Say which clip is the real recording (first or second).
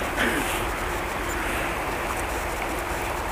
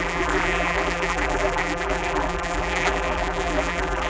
first